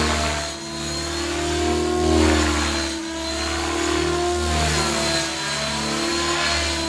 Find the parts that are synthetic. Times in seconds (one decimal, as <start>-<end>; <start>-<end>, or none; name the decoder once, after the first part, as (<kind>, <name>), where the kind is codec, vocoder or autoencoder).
none